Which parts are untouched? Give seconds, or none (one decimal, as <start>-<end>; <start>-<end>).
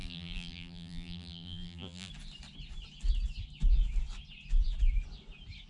2.1-5.7